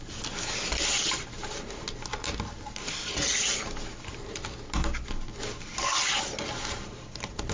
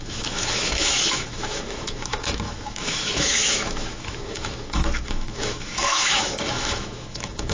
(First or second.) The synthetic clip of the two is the second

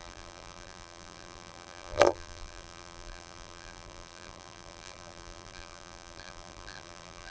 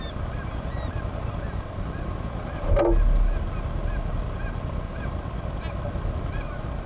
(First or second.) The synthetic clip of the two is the first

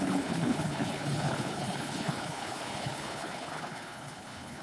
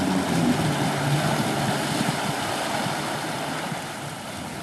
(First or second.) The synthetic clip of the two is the first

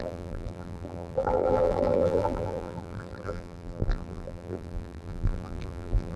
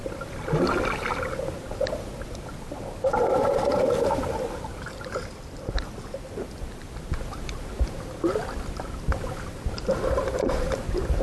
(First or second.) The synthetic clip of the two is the first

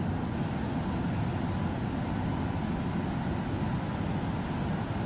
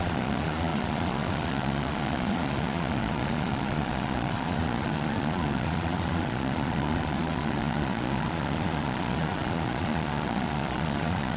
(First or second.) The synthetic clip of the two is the second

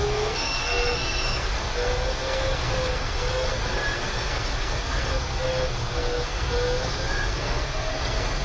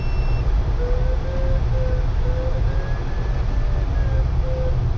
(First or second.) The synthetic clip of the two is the first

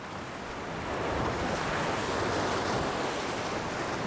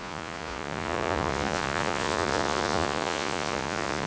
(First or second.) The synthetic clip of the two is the second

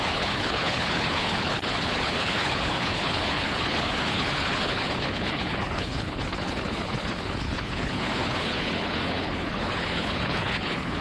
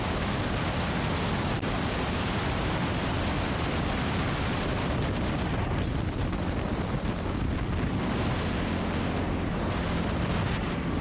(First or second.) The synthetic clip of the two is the first